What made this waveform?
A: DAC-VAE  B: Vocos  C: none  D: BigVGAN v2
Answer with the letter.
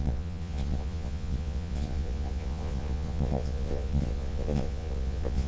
B